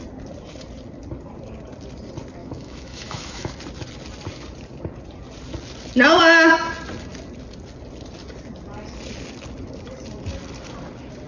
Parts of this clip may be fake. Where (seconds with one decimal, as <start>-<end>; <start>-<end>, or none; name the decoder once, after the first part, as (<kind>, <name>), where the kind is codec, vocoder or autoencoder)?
2.4-3.5 (autoencoder, DAC-VAE)